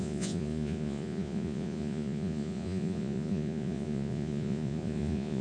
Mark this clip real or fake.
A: fake